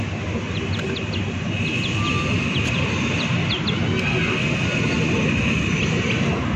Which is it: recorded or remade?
recorded